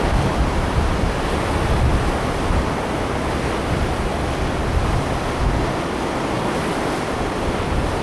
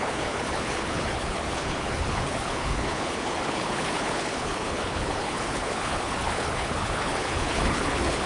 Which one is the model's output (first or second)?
second